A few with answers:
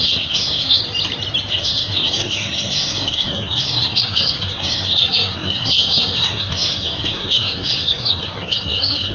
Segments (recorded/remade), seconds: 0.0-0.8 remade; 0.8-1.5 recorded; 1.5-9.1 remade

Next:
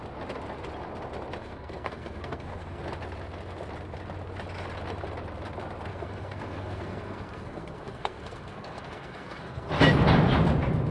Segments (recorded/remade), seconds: 0.0-1.4 recorded; 1.4-2.8 remade; 2.8-5.9 recorded; 5.9-9.7 remade; 9.7-10.9 recorded

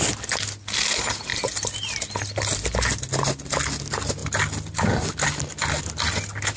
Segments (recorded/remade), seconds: 0.0-6.6 recorded

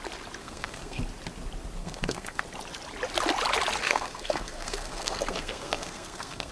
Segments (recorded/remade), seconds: 0.0-0.4 recorded; 0.4-1.0 remade; 1.0-1.8 recorded; 1.8-2.4 remade; 2.4-3.8 recorded; 3.8-6.5 remade

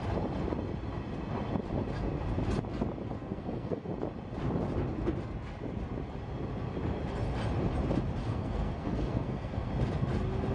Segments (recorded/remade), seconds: 0.0-3.2 recorded; 3.2-3.9 remade; 3.9-8.2 recorded; 8.2-9.7 remade; 9.7-10.5 recorded

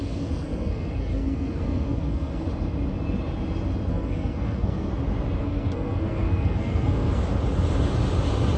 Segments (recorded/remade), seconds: 0.0-2.4 remade; 2.4-3.9 recorded; 3.9-4.9 remade; 4.9-5.4 recorded; 5.4-7.2 remade; 7.2-8.6 recorded

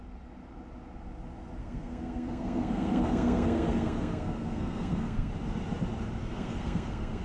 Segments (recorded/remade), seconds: 0.0-1.6 recorded; 1.6-5.3 remade; 5.3-6.2 recorded; 6.2-7.2 remade

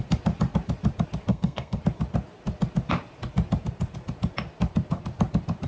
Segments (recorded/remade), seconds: 0.0-1.3 recorded; 1.3-1.8 remade; 1.8-5.7 recorded